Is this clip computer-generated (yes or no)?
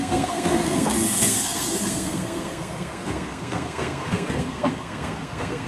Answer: yes